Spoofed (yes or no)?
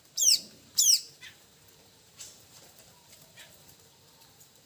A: yes